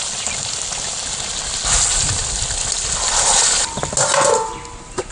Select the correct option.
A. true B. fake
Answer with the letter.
A